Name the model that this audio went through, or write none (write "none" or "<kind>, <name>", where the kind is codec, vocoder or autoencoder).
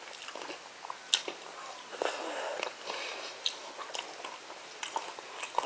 none